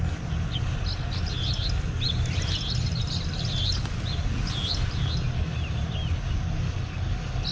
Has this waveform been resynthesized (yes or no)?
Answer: no